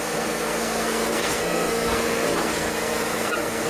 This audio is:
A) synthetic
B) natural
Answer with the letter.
A